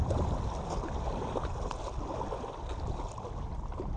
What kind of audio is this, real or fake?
real